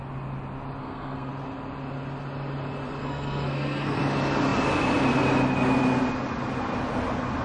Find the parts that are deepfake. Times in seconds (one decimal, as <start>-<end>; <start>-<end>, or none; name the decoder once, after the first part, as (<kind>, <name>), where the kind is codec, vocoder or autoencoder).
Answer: 0.8-1.3 (codec, SNAC); 3.0-4.0